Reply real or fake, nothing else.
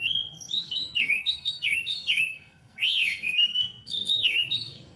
fake